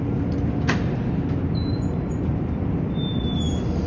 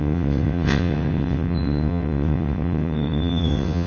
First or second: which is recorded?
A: first